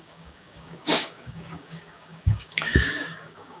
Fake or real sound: fake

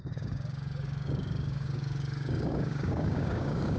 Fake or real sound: fake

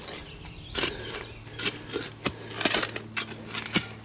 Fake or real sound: real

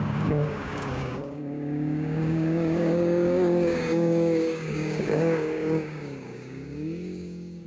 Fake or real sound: fake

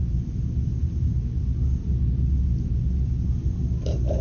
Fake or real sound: real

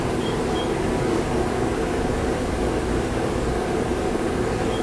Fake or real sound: fake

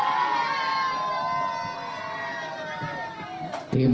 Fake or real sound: real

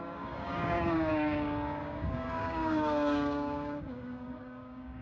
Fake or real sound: fake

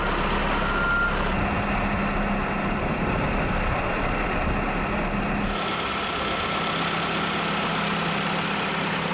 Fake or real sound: real